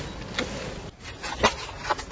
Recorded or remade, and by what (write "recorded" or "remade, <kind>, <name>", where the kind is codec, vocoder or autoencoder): recorded